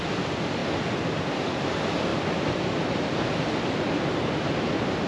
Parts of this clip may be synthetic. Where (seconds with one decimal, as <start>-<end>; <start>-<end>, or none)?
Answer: 0.6-1.7; 2.1-3.7